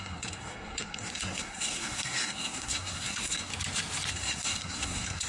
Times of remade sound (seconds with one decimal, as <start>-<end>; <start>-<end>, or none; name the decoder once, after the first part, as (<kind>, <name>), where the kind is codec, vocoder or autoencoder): 0.0-3.5 (codec, SNAC); 4.1-5.3